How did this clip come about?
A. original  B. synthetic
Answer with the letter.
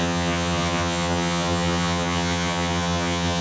B